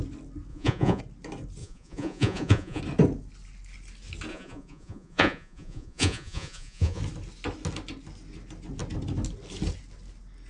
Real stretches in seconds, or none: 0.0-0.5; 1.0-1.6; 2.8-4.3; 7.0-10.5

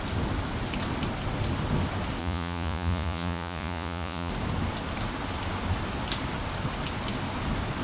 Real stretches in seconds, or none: 0.0-2.2; 4.3-7.8

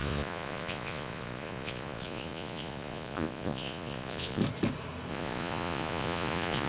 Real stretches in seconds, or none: 4.4-5.1

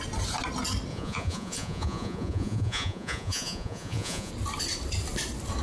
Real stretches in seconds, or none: 0.0-0.9; 4.3-5.6

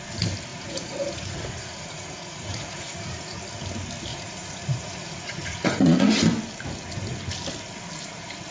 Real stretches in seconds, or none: 0.0-0.5; 3.4-4.1; 6.1-8.5

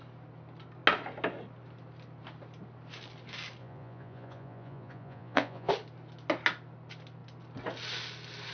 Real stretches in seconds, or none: 0.0-3.6; 5.7-8.5